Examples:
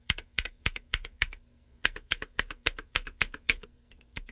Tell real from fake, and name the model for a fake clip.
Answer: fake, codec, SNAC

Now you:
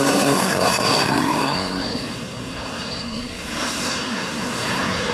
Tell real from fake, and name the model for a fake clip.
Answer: fake, codec, SNAC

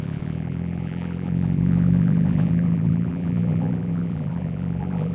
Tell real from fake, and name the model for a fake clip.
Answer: fake, vocoder, BigVGAN v2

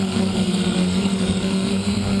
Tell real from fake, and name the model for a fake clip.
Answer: fake, codec, SNAC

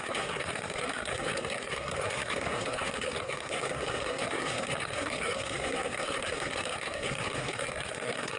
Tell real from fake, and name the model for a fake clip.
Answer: fake, codec, SNAC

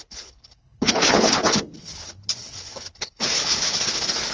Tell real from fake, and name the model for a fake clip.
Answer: fake, codec, HILCodec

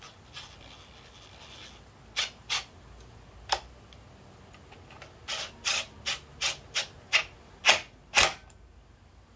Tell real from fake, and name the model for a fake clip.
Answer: real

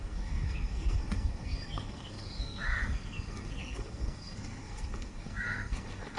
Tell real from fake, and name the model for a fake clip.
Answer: fake, codec, SNAC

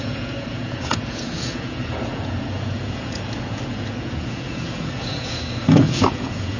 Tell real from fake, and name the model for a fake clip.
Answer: fake, vocoder, Vocos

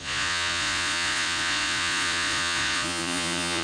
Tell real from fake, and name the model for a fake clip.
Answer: fake, vocoder, Vocos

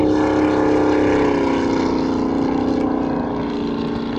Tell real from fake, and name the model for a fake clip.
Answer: real